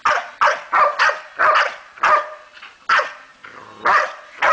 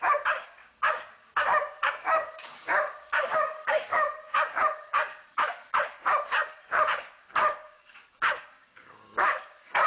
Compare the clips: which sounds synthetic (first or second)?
second